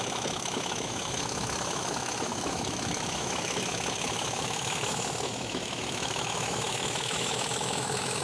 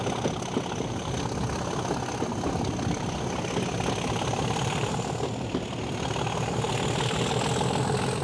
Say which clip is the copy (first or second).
first